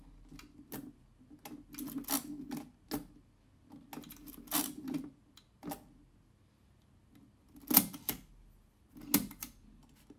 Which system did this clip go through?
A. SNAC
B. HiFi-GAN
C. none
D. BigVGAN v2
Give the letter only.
C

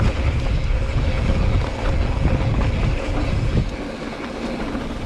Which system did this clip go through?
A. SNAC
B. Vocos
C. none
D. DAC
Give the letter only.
C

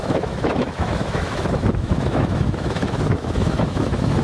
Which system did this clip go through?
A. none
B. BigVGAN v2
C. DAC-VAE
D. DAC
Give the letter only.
C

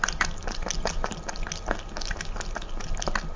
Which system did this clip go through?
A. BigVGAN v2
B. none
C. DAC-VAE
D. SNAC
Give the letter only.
B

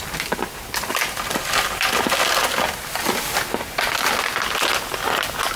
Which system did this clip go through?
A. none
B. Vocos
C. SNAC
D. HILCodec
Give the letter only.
A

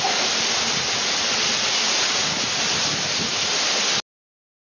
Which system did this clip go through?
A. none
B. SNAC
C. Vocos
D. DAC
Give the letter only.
A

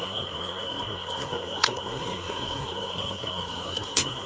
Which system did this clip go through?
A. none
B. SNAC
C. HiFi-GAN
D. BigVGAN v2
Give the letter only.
B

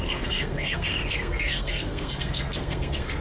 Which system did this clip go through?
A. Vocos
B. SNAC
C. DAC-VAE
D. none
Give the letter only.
B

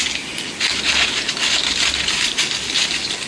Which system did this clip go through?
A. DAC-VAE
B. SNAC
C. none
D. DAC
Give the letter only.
C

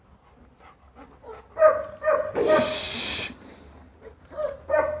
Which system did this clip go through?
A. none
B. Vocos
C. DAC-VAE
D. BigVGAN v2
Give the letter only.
A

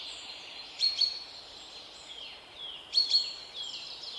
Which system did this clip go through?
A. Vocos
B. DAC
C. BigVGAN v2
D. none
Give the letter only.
C